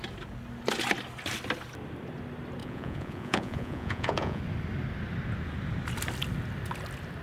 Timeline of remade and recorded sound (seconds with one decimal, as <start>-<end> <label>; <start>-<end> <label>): 0.0-2.6 recorded; 2.6-4.4 remade; 4.4-7.2 recorded